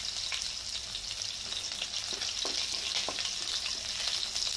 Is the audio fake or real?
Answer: real